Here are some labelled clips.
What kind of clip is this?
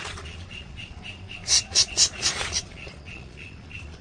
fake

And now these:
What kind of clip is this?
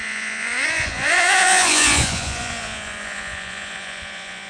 fake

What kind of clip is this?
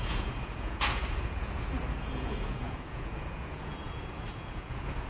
fake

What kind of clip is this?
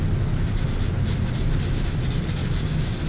real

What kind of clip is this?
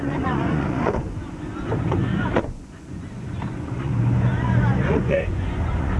fake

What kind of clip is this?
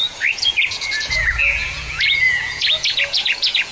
fake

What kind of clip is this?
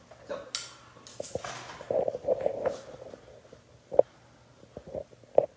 real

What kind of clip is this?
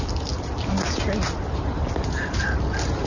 real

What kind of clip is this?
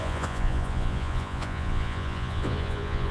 fake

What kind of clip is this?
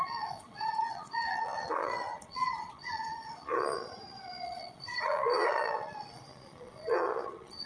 fake